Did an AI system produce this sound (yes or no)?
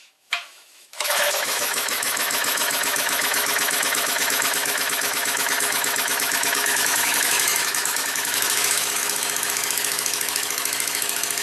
yes